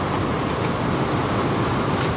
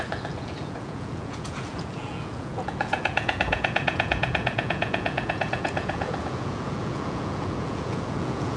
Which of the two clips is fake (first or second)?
second